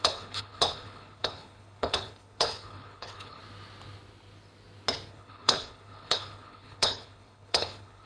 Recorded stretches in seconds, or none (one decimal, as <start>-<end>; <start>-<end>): 3.4-5.1